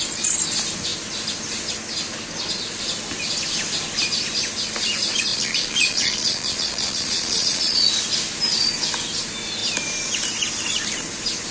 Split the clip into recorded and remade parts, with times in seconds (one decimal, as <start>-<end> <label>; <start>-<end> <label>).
0.0-5.3 recorded; 5.3-7.9 remade; 7.9-11.5 recorded